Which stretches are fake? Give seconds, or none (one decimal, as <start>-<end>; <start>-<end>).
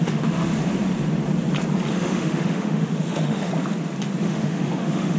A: 0.0-0.5; 1.9-3.5; 4.2-5.2